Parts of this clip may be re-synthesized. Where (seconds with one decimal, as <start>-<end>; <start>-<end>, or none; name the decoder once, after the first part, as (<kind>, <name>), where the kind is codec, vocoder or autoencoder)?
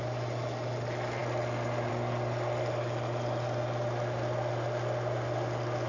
none